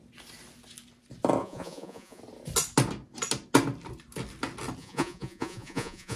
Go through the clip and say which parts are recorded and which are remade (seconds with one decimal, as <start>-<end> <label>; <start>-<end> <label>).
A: 0.0-1.4 recorded; 1.4-2.2 remade; 2.2-4.8 recorded; 4.8-6.2 remade